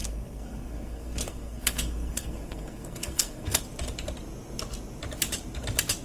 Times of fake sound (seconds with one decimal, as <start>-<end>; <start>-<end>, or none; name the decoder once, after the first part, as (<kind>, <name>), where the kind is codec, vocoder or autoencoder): 0.0-3.6 (codec, SNAC)